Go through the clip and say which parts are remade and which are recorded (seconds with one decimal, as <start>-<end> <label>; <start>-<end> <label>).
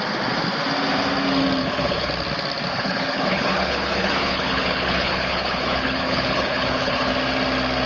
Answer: 0.0-1.6 recorded; 1.6-2.1 remade; 2.1-2.7 recorded; 2.7-7.1 remade; 7.1-7.9 recorded